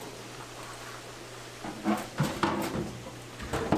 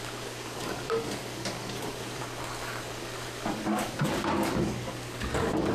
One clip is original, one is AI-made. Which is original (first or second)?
first